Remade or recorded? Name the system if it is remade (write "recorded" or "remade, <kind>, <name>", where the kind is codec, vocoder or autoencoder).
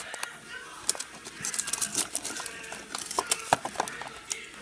recorded